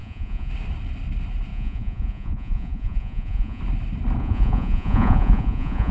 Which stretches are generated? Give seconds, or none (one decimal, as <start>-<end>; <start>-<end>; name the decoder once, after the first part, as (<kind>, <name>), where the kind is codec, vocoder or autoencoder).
0.0-0.5 (vocoder, Vocos); 1.5-3.6; 4.2-5.9